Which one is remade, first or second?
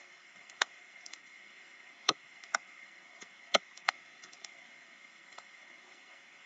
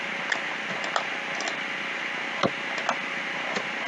first